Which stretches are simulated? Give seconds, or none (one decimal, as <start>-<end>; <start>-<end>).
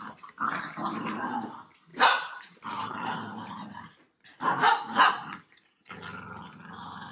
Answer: 1.9-4.0